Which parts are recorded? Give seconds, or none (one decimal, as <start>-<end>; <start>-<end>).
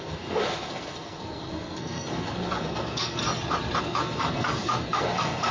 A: 3.2-3.8